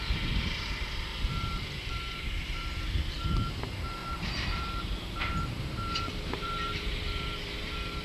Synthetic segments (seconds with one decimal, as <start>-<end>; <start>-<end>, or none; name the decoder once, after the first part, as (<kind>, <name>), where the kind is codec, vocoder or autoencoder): 0.0-1.1 (vocoder, BigVGAN v2); 1.8-8.0